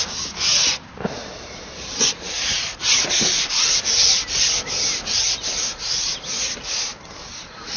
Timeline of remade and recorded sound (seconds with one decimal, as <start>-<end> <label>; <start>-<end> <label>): 0.0-3.3 recorded; 3.3-3.8 remade; 3.8-7.8 recorded

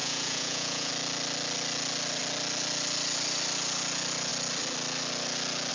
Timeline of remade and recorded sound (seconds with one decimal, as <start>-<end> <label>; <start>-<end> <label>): 0.0-0.9 remade; 0.9-5.7 recorded

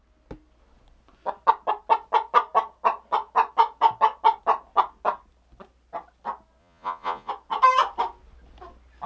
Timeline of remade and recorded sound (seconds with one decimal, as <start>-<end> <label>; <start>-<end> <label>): 0.0-6.6 recorded; 6.6-7.3 remade; 7.3-9.1 recorded

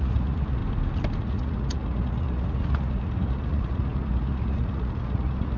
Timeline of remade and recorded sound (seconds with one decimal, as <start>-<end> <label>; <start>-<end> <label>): 0.0-0.6 remade; 0.6-1.2 recorded; 1.2-5.6 remade

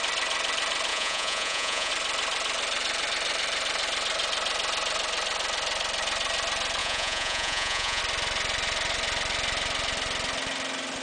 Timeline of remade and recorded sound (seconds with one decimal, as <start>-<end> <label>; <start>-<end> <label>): 0.0-0.9 recorded; 0.9-1.9 remade; 1.9-6.8 recorded; 6.8-8.0 remade; 8.0-11.0 recorded

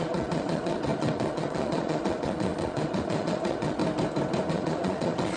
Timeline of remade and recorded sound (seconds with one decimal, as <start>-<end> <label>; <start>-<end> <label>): 0.0-3.8 remade; 3.8-4.5 recorded; 4.5-5.4 remade

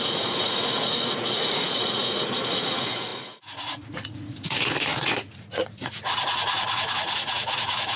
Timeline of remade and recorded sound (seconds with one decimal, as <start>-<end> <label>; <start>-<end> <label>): 0.0-8.0 remade

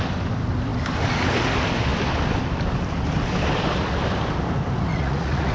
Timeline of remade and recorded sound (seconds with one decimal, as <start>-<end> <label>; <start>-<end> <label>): 0.0-4.9 recorded; 4.9-5.5 remade